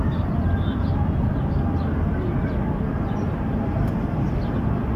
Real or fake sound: real